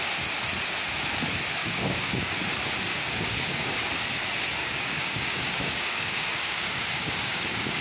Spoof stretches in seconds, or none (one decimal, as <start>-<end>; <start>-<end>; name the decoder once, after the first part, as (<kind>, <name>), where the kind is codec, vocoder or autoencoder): 1.6-2.3 (codec, DAC); 2.9-3.9; 4.6-7.8